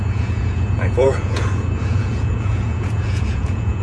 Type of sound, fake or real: fake